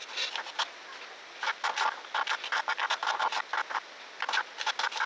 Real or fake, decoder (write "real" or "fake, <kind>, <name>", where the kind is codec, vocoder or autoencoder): real